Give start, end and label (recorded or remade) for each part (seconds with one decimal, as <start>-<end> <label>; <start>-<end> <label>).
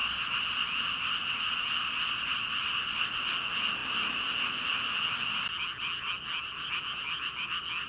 0.0-7.9 recorded